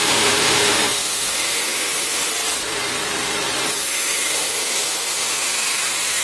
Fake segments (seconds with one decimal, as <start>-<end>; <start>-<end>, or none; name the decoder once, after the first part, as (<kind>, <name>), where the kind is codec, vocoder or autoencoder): 0.0-2.3 (autoencoder, DAC-VAE); 3.8-6.2